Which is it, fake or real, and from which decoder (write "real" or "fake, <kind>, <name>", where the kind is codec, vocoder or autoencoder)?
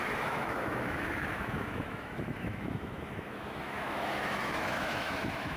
fake, autoencoder, DAC-VAE